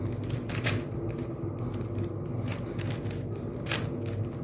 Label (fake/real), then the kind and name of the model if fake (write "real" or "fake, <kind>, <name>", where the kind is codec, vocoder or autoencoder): real